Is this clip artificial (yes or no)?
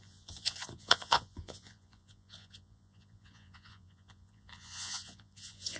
yes